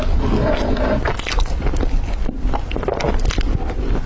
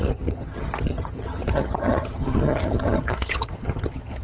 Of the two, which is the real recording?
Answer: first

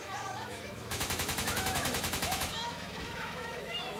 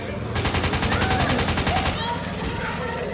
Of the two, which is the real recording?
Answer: second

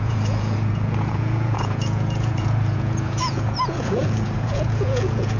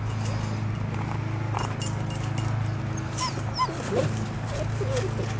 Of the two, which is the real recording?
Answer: second